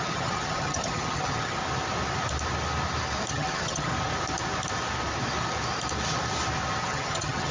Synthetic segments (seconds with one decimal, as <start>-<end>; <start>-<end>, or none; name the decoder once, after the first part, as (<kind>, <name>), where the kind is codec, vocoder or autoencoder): 0.0-1.6 (vocoder, HiFi-GAN); 3.3-3.9; 6.8-7.5